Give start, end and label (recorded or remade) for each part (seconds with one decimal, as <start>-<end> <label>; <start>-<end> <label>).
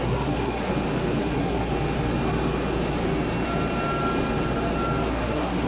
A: 0.0-0.7 remade; 0.7-1.2 recorded; 1.2-1.7 remade; 1.7-5.1 recorded; 5.1-5.7 remade